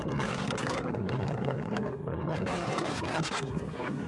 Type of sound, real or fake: fake